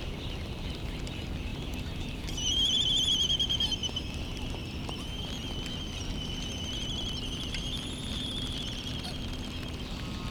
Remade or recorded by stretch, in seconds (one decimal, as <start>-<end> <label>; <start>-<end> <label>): 0.0-1.5 recorded; 1.5-3.1 remade; 3.1-8.0 recorded; 8.0-8.9 remade; 8.9-10.3 recorded